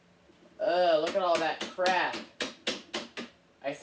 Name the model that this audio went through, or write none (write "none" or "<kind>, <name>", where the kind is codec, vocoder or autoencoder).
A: none